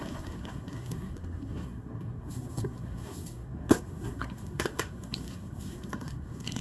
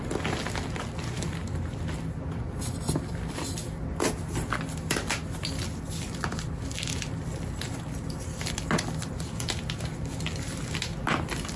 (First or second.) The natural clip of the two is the second